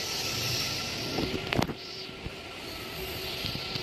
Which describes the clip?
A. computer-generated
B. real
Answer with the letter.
B